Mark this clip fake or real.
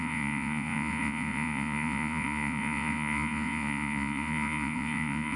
fake